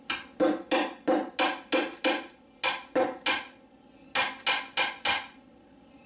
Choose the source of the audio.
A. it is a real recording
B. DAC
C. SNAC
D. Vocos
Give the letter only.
A